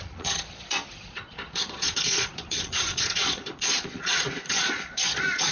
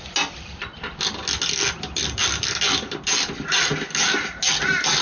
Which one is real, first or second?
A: second